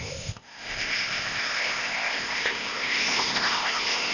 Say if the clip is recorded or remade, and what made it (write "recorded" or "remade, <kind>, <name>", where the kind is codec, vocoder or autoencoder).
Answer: remade, codec, ZipCodec